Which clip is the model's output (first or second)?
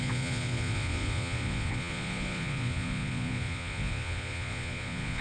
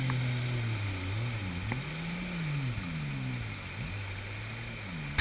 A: first